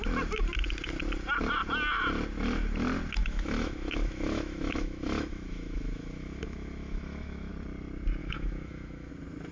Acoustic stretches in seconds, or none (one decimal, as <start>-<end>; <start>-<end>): 0.0-3.2; 7.5-8.2; 9.1-9.5